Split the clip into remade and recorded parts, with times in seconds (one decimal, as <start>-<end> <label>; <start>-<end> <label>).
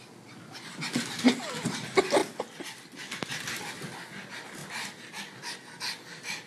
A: 0.0-6.5 recorded